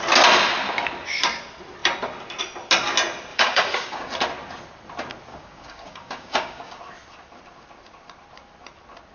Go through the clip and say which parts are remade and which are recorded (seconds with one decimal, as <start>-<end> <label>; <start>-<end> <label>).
0.0-3.3 recorded; 3.3-4.1 remade; 4.1-5.3 recorded; 5.3-6.8 remade; 6.8-9.1 recorded